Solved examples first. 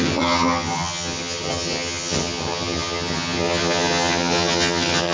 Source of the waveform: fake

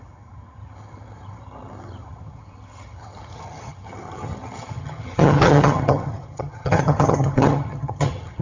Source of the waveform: fake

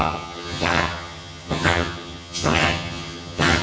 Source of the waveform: fake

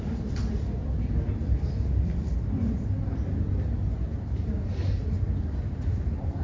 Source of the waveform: real